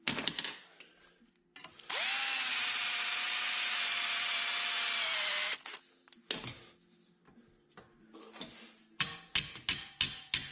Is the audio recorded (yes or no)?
yes